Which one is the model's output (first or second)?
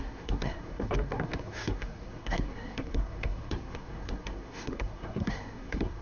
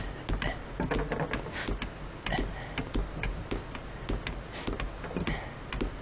first